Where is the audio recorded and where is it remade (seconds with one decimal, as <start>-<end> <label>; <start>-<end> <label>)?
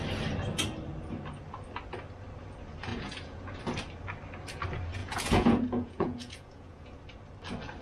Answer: 0.0-2.9 recorded; 2.9-3.6 remade; 3.6-5.0 recorded; 5.0-7.0 remade; 7.0-7.8 recorded